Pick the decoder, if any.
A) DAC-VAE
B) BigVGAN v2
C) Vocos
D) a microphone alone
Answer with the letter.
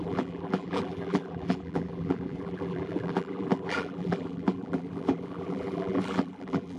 B